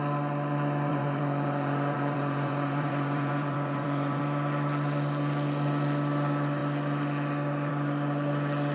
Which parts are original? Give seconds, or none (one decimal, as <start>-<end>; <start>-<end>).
0.0-0.9; 4.2-8.7